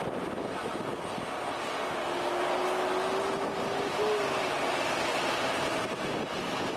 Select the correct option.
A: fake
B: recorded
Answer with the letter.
B